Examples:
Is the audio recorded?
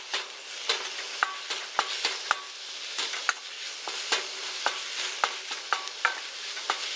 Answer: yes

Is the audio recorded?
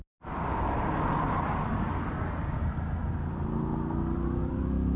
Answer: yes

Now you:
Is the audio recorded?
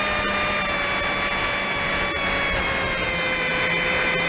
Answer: yes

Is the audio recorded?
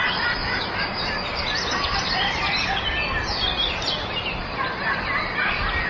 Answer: yes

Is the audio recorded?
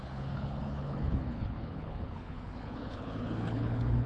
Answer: no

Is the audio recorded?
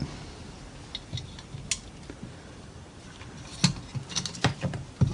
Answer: yes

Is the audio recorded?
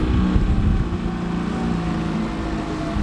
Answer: yes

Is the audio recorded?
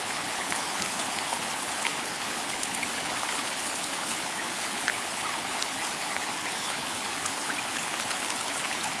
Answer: no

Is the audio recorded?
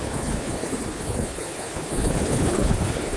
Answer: no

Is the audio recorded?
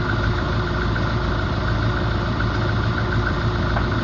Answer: yes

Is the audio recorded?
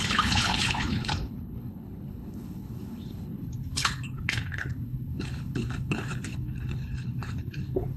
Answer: no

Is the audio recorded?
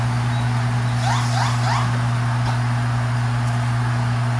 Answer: yes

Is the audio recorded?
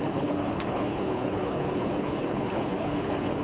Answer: no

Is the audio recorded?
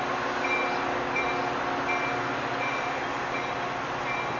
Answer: yes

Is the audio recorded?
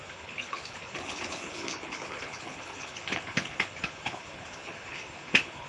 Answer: no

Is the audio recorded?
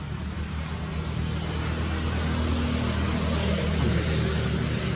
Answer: yes